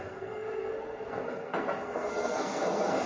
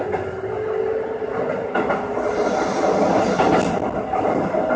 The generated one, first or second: first